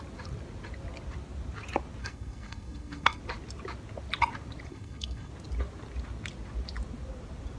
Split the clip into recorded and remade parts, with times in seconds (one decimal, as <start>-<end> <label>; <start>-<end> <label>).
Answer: 0.0-2.0 recorded; 2.0-3.2 remade; 3.2-4.7 recorded; 4.7-5.3 remade; 5.3-7.6 recorded